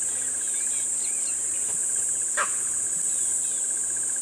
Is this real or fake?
real